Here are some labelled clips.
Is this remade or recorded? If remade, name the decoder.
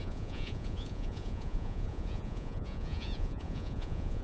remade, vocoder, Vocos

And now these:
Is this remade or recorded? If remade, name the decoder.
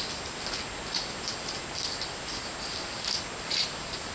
recorded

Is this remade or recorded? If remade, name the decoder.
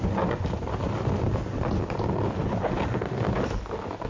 recorded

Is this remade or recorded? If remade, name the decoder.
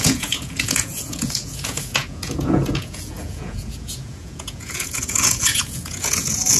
remade, vocoder, Vocos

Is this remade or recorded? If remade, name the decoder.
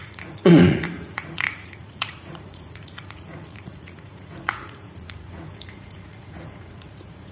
remade, vocoder, Vocos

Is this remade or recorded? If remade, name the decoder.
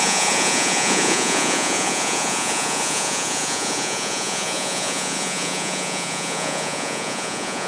remade, vocoder, Vocos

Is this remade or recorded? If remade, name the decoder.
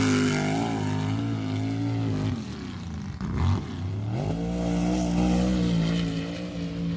recorded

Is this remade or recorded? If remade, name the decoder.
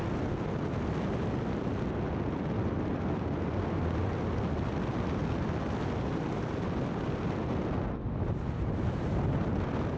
recorded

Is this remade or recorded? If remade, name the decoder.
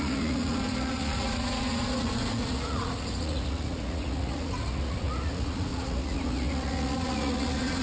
remade, vocoder, Vocos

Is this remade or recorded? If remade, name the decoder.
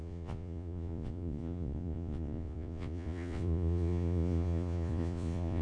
remade, vocoder, Vocos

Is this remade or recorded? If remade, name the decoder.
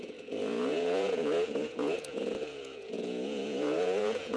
remade, vocoder, Vocos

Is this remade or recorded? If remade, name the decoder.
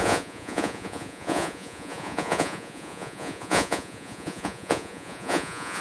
remade, vocoder, Vocos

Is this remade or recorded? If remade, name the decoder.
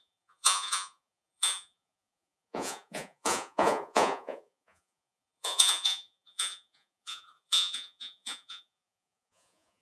remade, vocoder, Vocos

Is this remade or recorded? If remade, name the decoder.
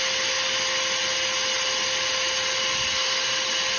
recorded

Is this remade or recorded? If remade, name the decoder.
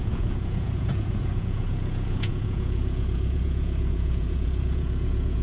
remade, vocoder, Vocos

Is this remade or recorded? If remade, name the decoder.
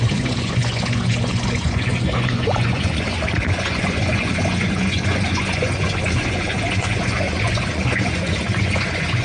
remade, vocoder, Vocos